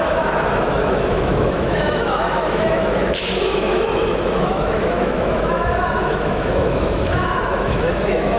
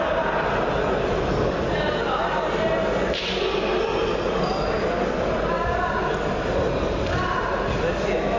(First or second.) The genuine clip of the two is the second